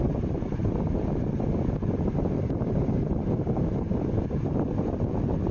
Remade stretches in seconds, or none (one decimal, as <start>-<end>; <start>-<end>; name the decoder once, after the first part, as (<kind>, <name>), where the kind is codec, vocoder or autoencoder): none